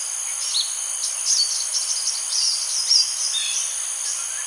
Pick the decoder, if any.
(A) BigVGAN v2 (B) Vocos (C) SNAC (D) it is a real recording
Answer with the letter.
D